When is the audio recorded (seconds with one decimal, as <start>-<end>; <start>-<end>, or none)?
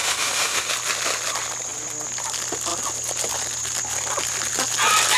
0.7-5.2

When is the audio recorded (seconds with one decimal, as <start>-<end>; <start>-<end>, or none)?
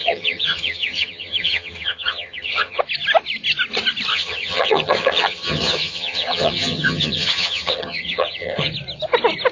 2.8-4.1; 8.7-9.5